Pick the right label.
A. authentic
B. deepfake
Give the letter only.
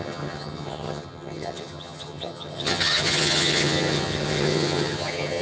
B